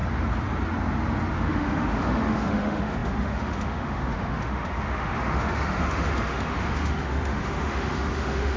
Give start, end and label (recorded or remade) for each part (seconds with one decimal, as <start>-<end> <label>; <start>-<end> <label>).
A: 0.0-1.3 recorded; 1.3-8.6 remade